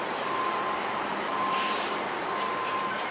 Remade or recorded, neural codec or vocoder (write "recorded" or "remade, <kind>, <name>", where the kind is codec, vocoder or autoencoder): remade, vocoder, BigVGAN v2